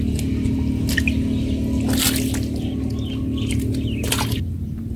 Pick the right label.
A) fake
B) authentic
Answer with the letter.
B